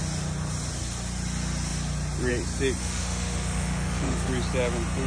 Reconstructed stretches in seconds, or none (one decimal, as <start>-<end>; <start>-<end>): 2.8-4.3

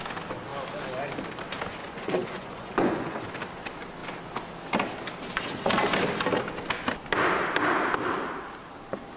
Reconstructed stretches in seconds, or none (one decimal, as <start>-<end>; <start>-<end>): 1.8-3.2

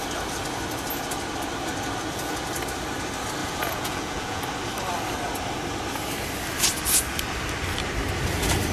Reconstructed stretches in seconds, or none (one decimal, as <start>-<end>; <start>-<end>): 3.4-4.4

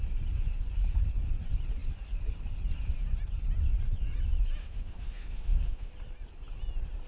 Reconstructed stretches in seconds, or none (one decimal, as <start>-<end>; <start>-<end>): 4.6-5.9

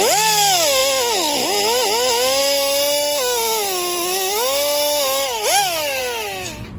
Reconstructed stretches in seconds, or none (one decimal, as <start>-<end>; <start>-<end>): 2.4-6.0

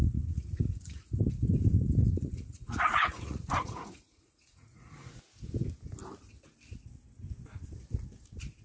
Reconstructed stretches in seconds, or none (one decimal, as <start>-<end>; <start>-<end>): 0.0-1.2; 2.0-5.2

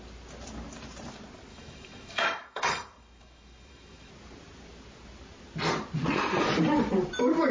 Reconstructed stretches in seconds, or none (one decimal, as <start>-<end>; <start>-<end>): 1.5-4.1